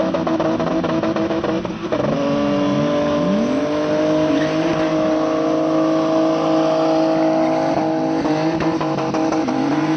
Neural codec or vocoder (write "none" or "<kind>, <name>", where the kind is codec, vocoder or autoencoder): none